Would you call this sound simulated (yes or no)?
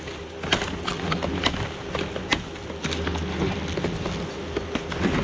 no